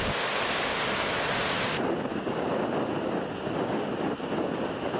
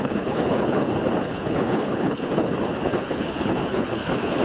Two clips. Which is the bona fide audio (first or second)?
first